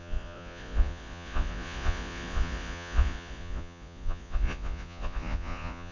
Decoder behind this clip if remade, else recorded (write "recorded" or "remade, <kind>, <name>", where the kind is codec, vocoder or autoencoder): remade, vocoder, Vocos